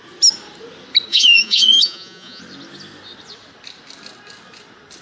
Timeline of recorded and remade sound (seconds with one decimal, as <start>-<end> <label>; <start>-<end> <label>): 0.0-1.1 recorded; 1.1-2.4 remade; 2.4-5.0 recorded